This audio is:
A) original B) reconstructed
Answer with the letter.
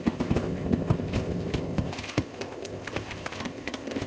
B